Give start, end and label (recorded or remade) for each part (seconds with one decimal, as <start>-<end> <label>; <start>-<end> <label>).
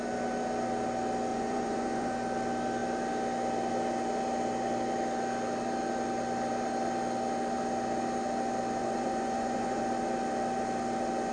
0.0-1.3 recorded; 1.3-2.1 remade; 2.1-8.8 recorded; 8.8-9.8 remade; 9.8-11.3 recorded